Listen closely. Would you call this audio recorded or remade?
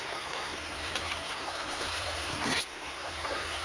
remade